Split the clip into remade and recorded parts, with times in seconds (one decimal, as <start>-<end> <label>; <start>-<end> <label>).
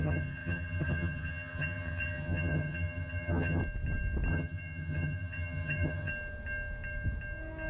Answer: 0.0-3.6 remade; 3.6-4.3 recorded; 4.3-6.1 remade; 6.1-7.7 recorded